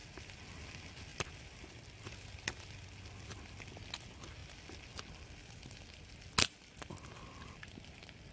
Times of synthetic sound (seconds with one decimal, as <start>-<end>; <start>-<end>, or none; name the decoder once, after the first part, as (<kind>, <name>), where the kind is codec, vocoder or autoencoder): none